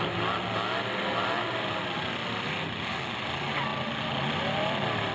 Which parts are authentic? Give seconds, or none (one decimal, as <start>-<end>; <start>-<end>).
0.0-5.1